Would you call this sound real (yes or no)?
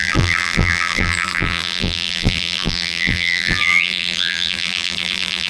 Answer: no